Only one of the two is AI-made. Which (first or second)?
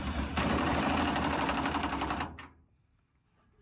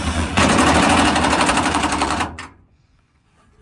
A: second